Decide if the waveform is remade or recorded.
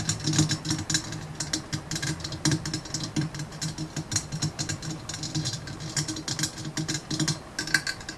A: recorded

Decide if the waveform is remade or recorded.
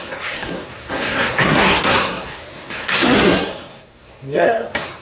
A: remade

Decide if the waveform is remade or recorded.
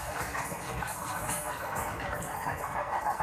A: remade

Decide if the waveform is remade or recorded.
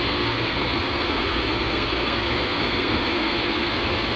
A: remade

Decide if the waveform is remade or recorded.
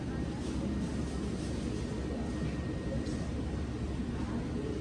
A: recorded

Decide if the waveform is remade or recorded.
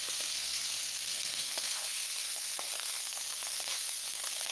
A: remade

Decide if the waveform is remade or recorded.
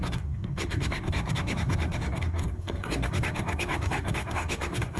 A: remade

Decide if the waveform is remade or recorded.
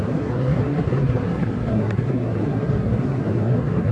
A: remade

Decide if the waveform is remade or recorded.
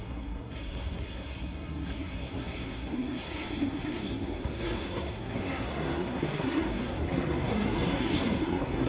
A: remade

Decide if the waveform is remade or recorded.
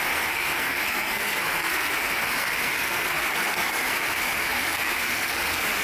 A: remade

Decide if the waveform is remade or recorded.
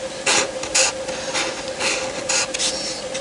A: recorded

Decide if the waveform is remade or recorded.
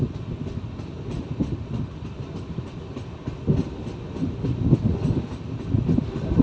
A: recorded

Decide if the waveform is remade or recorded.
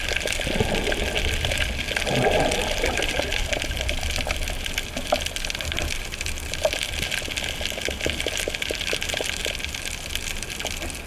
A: recorded